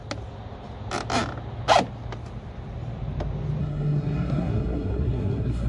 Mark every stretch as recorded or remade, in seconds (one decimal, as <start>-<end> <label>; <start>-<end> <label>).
0.0-3.6 recorded; 3.6-5.7 remade